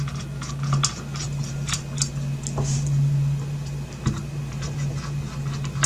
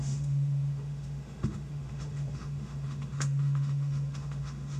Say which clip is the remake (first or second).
second